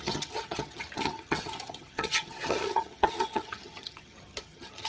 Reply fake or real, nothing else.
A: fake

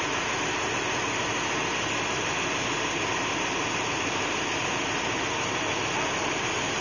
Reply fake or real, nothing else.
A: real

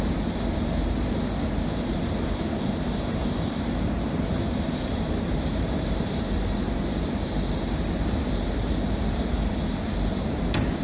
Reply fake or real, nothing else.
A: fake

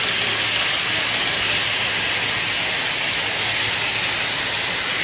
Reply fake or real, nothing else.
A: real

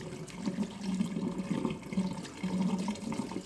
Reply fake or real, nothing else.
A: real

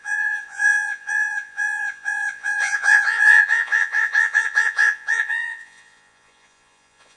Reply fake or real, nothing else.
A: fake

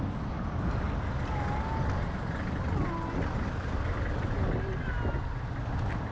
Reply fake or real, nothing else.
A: real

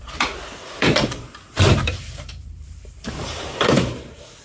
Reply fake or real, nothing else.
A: fake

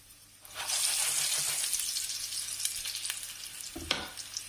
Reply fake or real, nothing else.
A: real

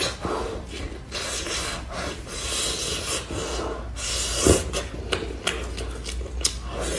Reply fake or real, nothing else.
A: real